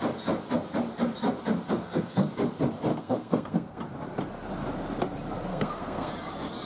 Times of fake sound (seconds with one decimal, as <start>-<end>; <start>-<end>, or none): 1.7-2.3; 2.9-3.8; 5.5-6.1